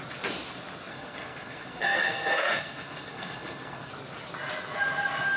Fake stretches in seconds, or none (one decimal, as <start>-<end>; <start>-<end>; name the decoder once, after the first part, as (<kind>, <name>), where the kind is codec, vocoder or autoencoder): 0.9-3.9 (codec, SNAC)

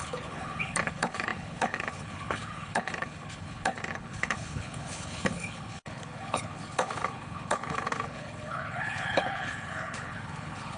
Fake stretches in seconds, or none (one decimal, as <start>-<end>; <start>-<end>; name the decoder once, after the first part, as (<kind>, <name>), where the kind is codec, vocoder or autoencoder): 0.0-10.8 (codec, HILCodec)

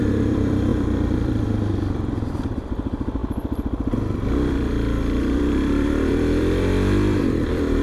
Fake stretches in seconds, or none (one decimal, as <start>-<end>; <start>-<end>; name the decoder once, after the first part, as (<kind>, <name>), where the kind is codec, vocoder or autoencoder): 0.0-7.8 (vocoder, BigVGAN v2)

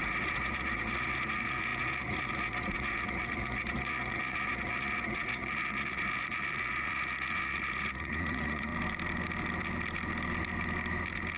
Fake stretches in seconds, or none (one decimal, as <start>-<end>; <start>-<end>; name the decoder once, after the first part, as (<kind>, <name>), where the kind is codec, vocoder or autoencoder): 0.0-8.7 (vocoder, Vocos)

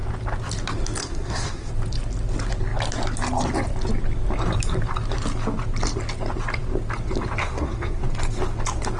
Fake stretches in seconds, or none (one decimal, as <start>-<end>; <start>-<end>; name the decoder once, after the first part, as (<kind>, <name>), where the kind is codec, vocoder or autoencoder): 1.0-1.7 (codec, SNAC); 7.4-8.0

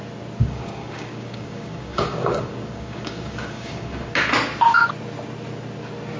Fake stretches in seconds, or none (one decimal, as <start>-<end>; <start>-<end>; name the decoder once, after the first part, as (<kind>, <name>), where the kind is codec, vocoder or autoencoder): 0.4-4.1 (codec, DAC)

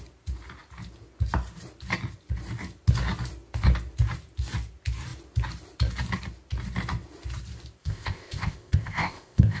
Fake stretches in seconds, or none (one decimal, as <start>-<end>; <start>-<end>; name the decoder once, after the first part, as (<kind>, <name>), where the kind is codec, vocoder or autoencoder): 7.8-9.6 (codec, ZipCodec)